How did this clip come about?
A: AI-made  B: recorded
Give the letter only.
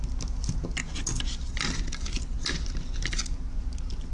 B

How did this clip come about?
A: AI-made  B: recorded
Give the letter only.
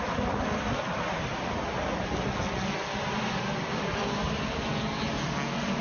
B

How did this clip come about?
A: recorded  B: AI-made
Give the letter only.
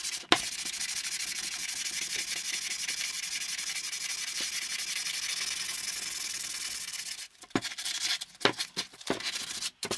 A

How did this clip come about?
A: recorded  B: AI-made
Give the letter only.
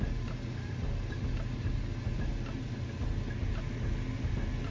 A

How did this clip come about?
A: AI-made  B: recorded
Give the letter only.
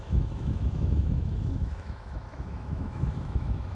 A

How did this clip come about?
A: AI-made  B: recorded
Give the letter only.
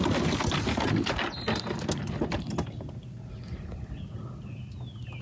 B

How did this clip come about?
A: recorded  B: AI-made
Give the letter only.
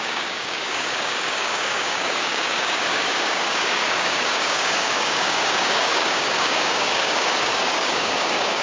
B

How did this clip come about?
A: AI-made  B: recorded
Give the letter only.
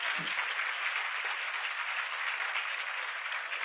B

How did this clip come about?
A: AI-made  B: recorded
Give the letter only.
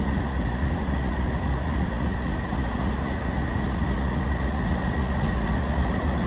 A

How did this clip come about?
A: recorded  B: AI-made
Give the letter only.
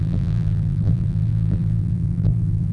B